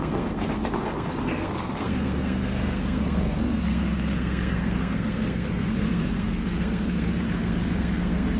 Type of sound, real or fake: fake